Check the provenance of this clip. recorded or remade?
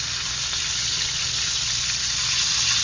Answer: recorded